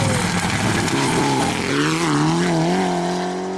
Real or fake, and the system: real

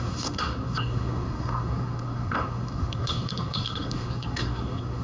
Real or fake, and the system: fake, codec, SNAC